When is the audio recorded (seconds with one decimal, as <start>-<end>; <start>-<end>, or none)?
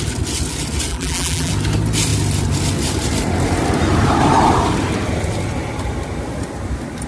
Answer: 0.0-0.9; 1.5-7.1